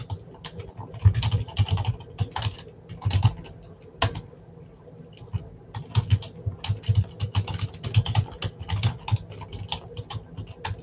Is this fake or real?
real